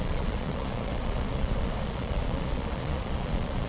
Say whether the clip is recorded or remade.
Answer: remade